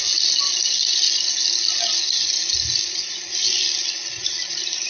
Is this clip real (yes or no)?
yes